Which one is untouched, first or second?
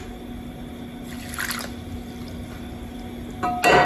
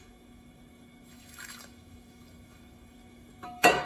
first